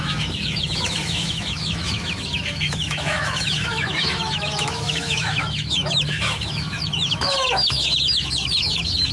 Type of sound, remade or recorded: remade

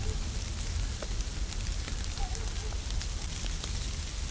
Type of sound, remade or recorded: recorded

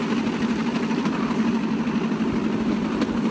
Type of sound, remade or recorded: recorded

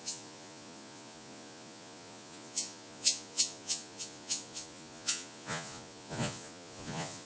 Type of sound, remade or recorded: remade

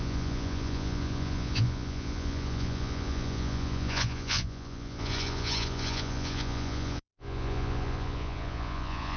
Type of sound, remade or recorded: remade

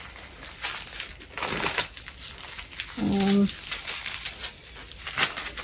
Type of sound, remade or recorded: recorded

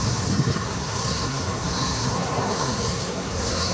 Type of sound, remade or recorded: remade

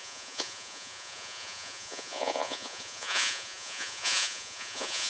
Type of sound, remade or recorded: remade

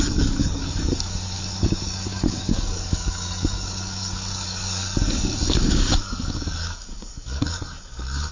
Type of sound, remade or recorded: remade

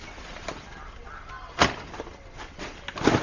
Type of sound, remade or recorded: recorded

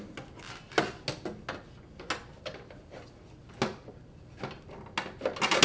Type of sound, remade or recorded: recorded